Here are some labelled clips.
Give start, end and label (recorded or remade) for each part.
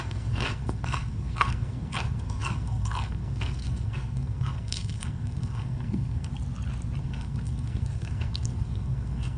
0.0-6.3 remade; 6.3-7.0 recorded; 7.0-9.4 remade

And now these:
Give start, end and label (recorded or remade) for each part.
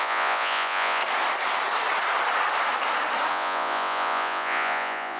0.0-1.0 remade; 1.0-3.3 recorded; 3.3-5.2 remade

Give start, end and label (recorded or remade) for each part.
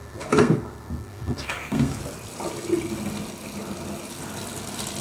0.0-2.0 remade; 2.0-5.0 recorded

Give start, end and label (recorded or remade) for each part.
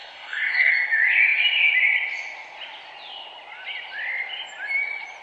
0.0-0.7 remade; 0.7-5.2 recorded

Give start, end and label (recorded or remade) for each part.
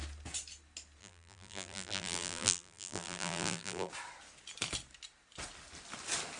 0.0-1.0 recorded; 1.0-3.9 remade; 3.9-6.4 recorded